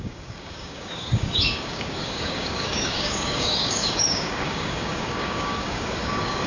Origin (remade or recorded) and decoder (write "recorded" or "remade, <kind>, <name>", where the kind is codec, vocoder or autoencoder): remade, codec, DAC